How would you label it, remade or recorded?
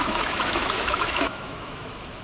remade